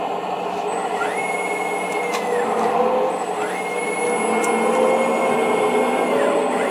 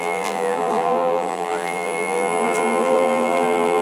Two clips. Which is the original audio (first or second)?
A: first